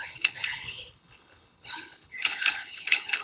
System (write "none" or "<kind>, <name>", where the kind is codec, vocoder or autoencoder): codec, HILCodec